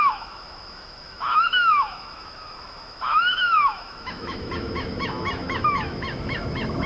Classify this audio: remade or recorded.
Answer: remade